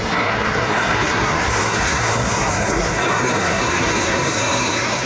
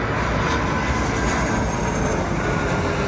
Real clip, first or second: second